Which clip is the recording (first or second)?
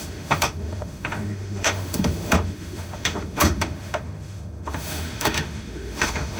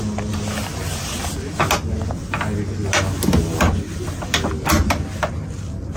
second